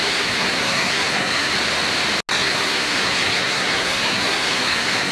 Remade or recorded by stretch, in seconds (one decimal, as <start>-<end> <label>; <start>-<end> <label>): 0.0-1.5 remade; 1.5-2.3 recorded; 2.3-5.1 remade